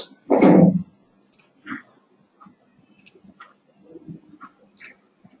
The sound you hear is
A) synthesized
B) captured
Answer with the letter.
B